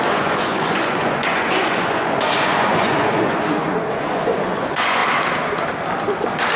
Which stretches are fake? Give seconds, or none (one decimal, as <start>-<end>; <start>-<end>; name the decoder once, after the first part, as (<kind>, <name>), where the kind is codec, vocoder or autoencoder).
0.0-5.0 (vocoder, Vocos)